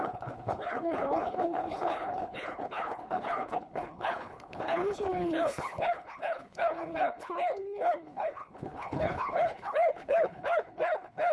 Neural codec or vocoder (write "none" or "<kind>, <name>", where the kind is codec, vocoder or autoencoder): codec, HILCodec